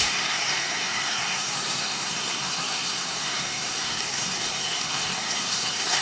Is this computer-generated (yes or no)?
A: yes